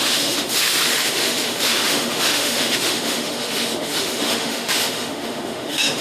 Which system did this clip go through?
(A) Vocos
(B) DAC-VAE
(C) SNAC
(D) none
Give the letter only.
B